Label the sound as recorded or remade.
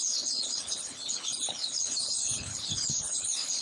remade